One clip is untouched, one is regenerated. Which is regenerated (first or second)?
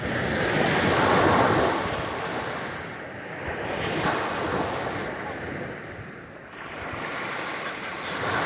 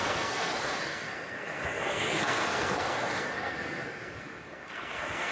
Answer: second